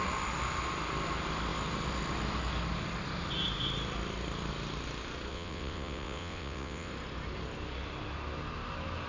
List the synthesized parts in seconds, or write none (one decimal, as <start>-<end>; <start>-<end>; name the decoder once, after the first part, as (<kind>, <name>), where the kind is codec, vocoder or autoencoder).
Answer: 5.3-6.9 (vocoder, WaveNeXt)